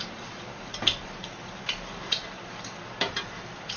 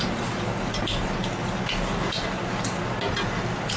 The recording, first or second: second